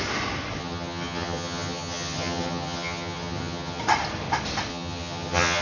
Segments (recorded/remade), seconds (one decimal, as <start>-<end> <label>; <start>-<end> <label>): 0.0-0.6 recorded; 0.6-3.8 remade; 3.8-4.7 recorded; 4.7-5.6 remade